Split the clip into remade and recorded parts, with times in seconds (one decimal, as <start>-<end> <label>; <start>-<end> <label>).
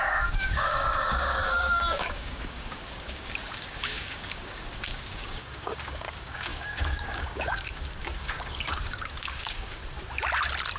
0.0-9.8 remade; 9.8-10.8 recorded